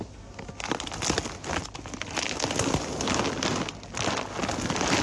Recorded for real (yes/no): yes